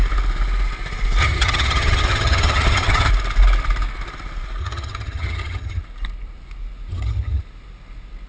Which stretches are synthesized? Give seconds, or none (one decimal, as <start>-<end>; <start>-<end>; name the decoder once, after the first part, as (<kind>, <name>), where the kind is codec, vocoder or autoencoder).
1.2-3.1 (vocoder, HiFi-GAN); 4.6-5.8; 6.9-7.4